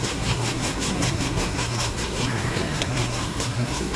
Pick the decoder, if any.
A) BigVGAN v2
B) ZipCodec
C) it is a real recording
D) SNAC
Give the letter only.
D